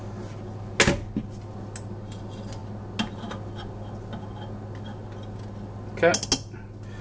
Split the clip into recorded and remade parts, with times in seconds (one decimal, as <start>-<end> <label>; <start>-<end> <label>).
0.0-7.0 recorded